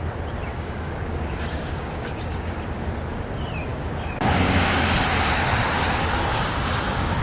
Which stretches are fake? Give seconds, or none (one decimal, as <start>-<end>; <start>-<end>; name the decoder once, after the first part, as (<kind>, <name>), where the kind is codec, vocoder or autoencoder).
0.5-2.5 (codec, DAC); 3.7-4.8; 6.3-7.2